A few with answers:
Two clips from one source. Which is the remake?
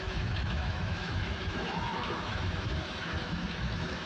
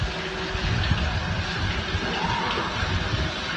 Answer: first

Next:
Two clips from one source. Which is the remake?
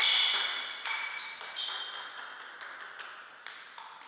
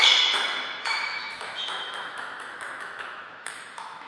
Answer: second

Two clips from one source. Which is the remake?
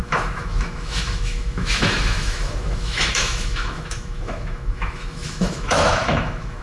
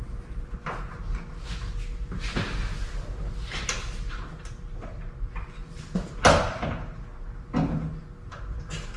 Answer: first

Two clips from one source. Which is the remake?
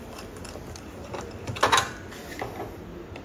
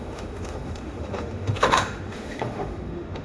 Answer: second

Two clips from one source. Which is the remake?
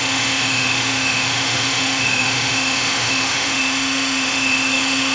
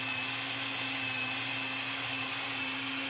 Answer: first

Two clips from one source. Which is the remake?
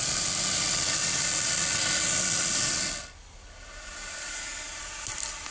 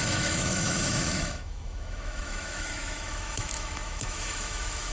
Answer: second